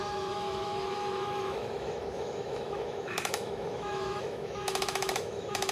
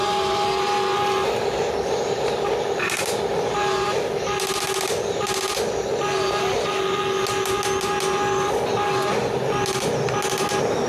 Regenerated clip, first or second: first